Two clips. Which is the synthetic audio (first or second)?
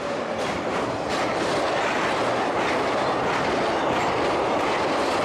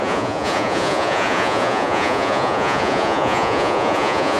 second